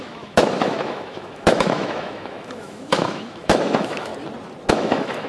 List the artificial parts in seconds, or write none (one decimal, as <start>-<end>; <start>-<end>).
0.0-4.1; 4.7-5.3

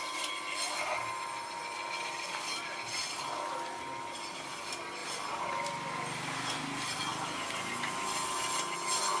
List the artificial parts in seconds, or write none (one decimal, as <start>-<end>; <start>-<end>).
none

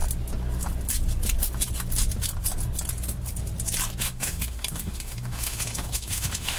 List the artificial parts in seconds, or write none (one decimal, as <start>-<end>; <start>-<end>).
4.0-6.6

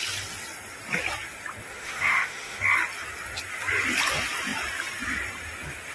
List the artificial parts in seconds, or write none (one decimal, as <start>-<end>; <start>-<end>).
1.7-2.6

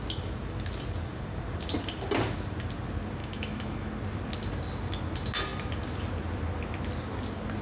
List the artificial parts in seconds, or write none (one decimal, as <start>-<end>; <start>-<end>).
3.2-3.9